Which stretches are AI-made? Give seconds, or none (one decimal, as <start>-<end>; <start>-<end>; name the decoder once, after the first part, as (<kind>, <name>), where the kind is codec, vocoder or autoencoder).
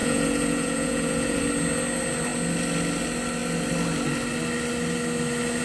0.0-1.4 (vocoder, Vocos)